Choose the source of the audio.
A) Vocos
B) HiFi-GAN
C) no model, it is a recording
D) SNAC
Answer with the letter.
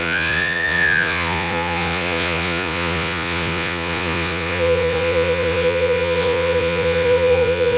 A